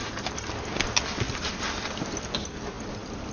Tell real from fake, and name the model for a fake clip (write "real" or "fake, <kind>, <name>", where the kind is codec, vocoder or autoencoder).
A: real